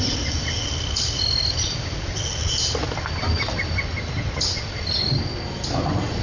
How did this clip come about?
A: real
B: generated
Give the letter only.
A